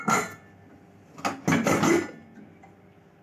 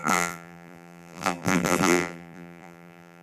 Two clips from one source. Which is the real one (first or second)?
first